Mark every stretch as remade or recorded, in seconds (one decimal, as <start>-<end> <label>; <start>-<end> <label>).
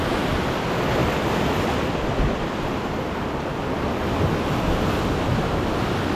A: 0.0-6.2 recorded